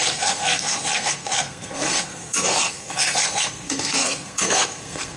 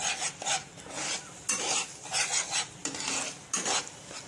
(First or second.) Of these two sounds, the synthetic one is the first